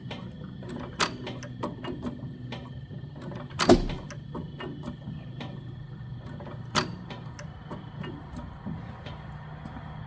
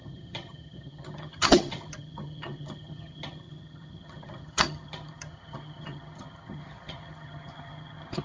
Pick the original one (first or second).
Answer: first